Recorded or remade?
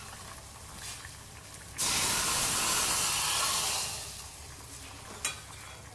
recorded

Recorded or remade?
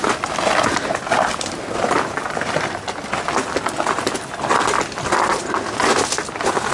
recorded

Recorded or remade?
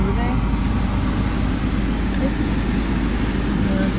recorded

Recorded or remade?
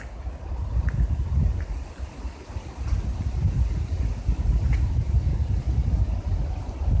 recorded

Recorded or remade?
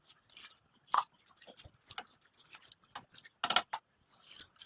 recorded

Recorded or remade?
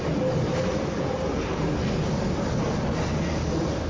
recorded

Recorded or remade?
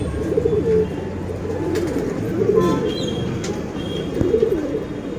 recorded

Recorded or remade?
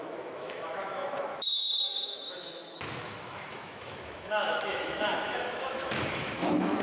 remade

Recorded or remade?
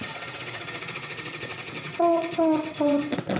remade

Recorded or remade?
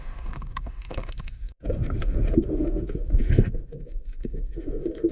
remade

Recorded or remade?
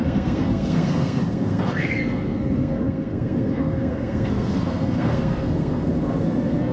remade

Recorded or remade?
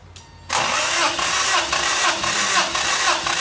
recorded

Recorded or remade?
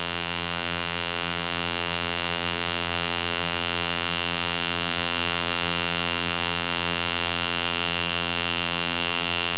remade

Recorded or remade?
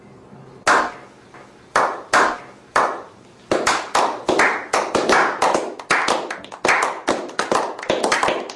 recorded